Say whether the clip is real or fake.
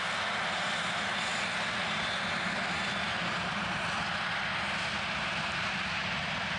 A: real